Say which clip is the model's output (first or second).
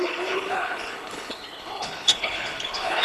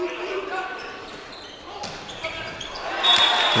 first